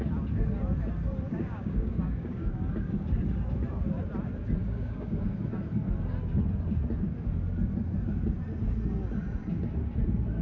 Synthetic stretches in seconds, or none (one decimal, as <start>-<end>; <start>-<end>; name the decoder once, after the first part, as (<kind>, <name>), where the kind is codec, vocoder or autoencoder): 1.3-2.6 (codec, DAC); 4.6-5.3